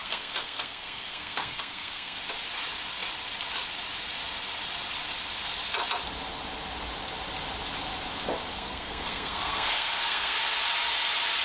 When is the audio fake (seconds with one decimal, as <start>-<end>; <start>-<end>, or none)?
0.0-2.2; 8.5-10.4